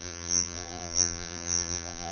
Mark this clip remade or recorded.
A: remade